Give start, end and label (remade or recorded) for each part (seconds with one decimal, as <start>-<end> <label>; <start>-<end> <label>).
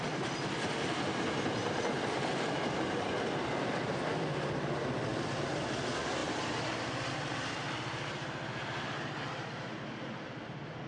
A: 0.0-1.6 recorded; 1.6-2.8 remade; 2.8-5.1 recorded; 5.1-5.7 remade; 5.7-10.9 recorded